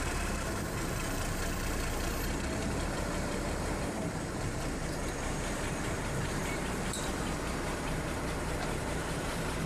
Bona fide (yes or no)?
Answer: no